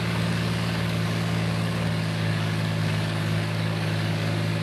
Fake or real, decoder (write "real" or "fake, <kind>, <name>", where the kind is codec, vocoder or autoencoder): fake, codec, DAC